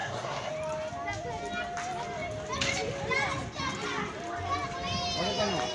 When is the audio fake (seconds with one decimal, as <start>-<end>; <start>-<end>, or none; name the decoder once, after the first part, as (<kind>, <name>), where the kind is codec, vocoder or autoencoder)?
0.0-0.5 (codec, SNAC)